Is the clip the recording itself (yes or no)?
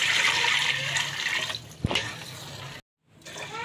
yes